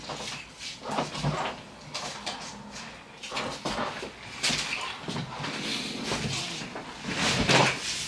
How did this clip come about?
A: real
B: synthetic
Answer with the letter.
A